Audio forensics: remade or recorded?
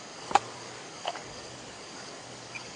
remade